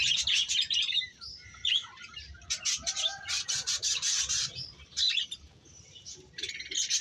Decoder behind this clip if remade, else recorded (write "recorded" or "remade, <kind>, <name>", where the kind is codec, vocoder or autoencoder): remade, vocoder, BigVGAN v2